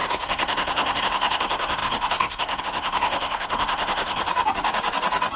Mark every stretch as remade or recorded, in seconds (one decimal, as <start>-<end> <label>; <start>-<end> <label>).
0.0-4.2 remade; 4.2-5.4 recorded